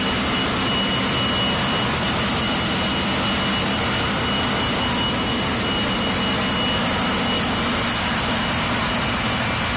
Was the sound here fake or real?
real